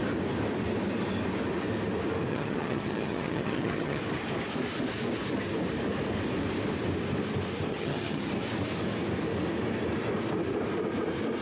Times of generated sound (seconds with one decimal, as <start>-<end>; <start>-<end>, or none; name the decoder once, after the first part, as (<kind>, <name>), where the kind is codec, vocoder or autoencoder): 2.3-4.0 (vocoder, HiFi-GAN); 7.7-8.3